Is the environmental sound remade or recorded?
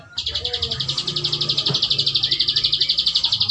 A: recorded